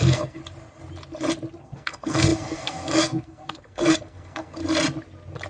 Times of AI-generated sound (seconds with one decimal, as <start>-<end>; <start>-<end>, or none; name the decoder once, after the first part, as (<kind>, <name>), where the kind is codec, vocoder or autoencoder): 0.0-0.4 (codec, SNAC); 1.6-4.6